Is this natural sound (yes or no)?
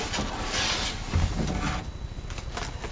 yes